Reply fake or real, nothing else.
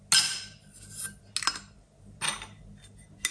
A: real